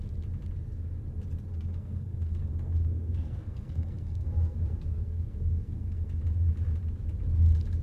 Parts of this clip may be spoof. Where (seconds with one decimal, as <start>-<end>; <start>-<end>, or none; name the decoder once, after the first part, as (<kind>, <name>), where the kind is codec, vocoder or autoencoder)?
1.5-6.2 (codec, SNAC)

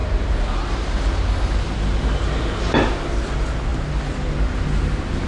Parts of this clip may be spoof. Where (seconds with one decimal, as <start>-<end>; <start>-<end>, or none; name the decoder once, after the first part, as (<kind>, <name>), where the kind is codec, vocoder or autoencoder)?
none

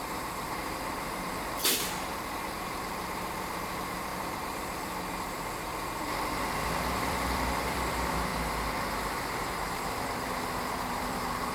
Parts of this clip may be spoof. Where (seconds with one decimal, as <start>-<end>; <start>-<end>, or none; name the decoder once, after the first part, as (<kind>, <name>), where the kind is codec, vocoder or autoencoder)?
0.0-8.3 (vocoder, BigVGAN v2); 8.9-11.5

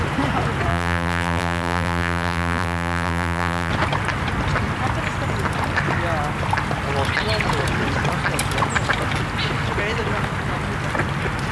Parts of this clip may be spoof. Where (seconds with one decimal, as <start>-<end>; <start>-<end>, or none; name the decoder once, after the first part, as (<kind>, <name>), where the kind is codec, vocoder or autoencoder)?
0.7-3.7 (vocoder, BigVGAN v2)

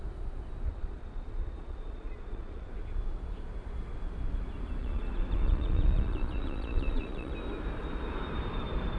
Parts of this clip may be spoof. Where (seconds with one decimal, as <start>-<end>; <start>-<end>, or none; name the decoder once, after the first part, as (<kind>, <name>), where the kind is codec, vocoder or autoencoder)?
0.7-2.7 (vocoder, Vocos); 4.8-7.3